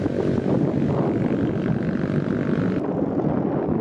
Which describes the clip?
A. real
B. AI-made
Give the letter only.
A